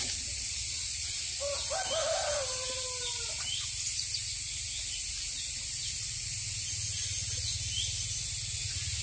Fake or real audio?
real